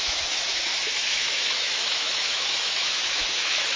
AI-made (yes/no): yes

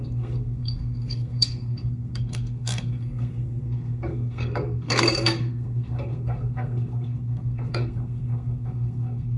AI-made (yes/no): yes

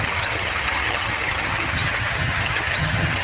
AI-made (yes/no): yes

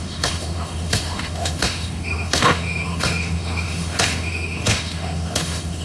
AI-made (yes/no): yes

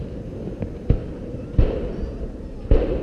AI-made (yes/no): no